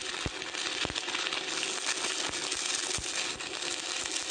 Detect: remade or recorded recorded